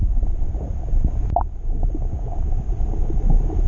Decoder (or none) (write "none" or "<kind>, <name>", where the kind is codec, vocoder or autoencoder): none